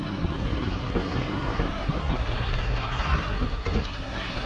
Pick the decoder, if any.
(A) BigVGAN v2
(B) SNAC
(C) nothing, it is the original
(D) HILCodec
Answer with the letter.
B